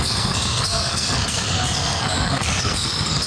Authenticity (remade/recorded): remade